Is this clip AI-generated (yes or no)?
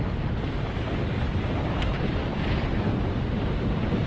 no